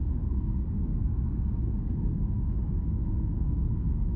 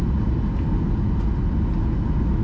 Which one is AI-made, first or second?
first